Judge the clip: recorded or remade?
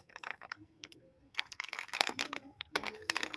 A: remade